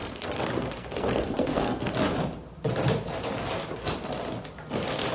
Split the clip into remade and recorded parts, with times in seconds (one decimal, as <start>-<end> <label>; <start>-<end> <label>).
0.0-1.9 remade; 1.9-5.1 recorded